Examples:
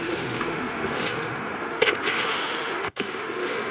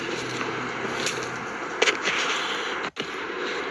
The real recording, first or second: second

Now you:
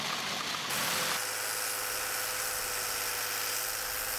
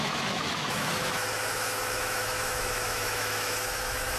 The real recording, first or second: first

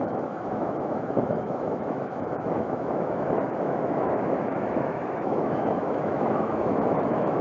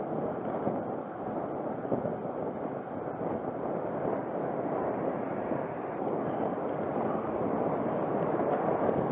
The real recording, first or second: second